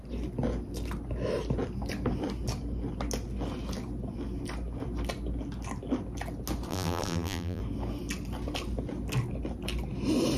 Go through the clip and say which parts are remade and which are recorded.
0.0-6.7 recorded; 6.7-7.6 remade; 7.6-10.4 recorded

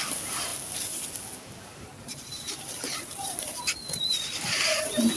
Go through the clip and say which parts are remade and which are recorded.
0.0-3.5 remade; 3.5-4.4 recorded; 4.4-5.2 remade

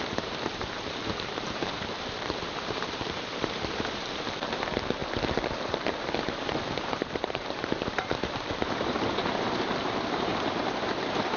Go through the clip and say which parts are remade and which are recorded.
0.0-10.3 remade; 10.3-11.4 recorded

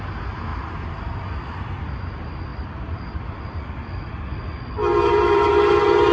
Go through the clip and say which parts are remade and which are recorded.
0.0-0.5 recorded; 0.5-1.8 remade; 1.8-2.5 recorded; 2.5-4.2 remade; 4.2-4.9 recorded; 4.9-5.5 remade; 5.5-6.1 recorded

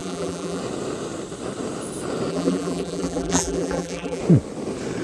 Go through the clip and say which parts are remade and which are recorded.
0.0-0.6 remade; 0.6-2.3 recorded; 2.3-4.2 remade; 4.2-5.0 recorded

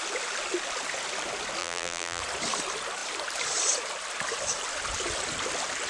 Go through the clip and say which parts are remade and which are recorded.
0.0-1.6 recorded; 1.6-2.2 remade; 2.2-5.9 recorded

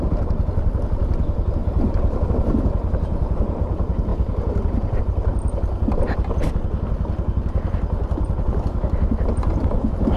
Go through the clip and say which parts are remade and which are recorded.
0.0-1.6 recorded; 1.6-2.3 remade; 2.3-4.1 recorded; 4.1-5.0 remade; 5.0-10.2 recorded